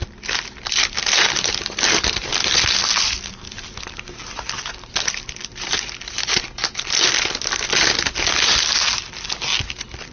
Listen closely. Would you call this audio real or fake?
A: real